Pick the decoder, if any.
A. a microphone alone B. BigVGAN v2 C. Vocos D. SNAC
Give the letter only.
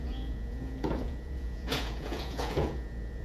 C